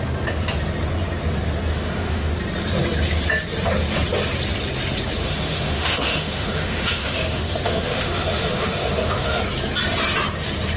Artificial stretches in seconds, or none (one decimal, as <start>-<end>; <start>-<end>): 1.7-2.3; 5.2-9.4